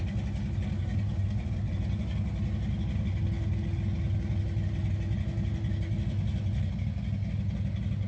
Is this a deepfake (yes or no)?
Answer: no